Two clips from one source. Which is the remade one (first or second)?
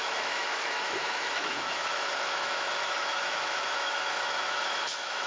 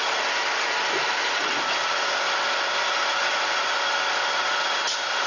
first